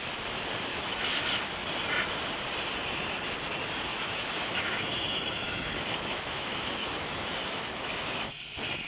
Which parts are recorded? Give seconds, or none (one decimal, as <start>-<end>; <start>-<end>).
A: 0.0-0.7; 1.2-3.9; 8.3-8.9